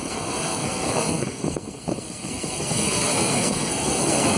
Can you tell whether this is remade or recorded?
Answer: remade